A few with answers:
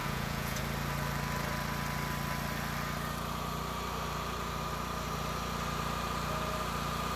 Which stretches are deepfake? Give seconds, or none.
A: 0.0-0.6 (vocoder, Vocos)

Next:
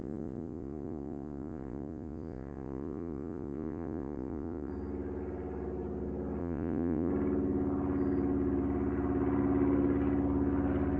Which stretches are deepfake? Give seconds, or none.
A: 0.0-4.7 (vocoder, Vocos); 6.4-7.1